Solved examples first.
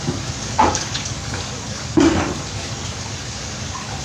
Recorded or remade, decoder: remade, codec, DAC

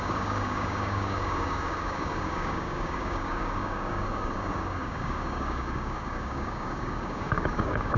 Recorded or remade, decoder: remade, codec, DAC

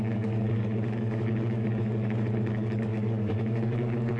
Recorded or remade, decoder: remade, codec, DAC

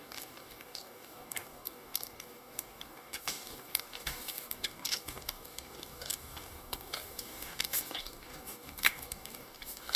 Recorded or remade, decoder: remade, codec, DAC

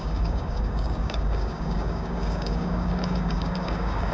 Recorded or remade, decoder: remade, codec, DAC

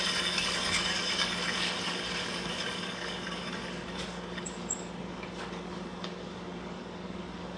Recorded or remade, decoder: remade, codec, DAC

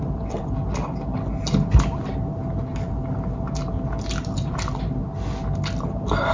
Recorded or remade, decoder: recorded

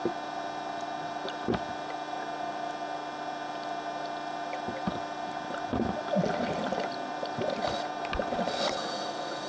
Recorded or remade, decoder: recorded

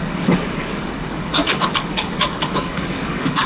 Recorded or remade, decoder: remade, codec, DAC